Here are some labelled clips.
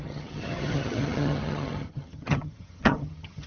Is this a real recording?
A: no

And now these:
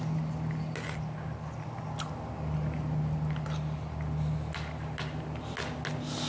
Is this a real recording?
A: yes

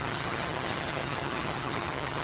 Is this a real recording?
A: no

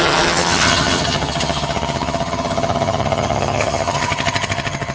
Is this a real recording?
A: no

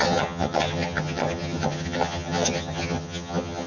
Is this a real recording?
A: no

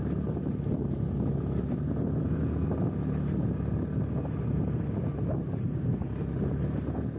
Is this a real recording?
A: yes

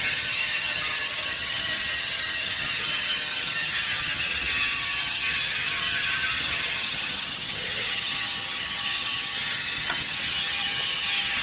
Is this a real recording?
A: no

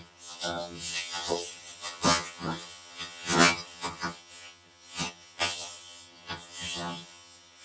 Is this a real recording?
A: no